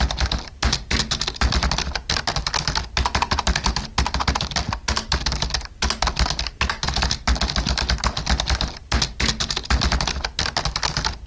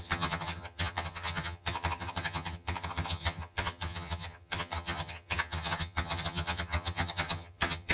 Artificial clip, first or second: second